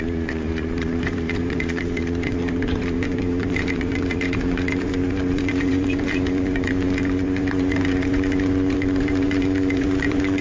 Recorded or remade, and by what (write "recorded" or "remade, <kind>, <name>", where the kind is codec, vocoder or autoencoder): remade, vocoder, Vocos